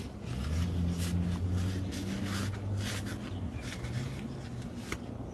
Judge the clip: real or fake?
real